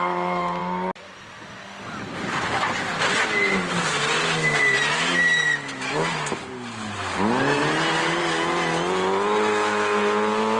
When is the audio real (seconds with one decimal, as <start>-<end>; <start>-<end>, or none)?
0.0-10.6